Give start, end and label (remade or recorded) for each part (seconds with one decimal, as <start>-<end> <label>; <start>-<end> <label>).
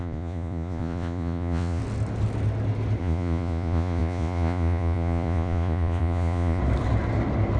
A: 0.0-1.8 remade; 1.8-3.0 recorded; 3.0-6.6 remade; 6.6-7.6 recorded